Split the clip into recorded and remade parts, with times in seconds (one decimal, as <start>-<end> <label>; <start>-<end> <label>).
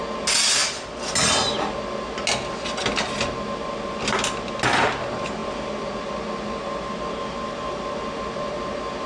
0.0-9.1 recorded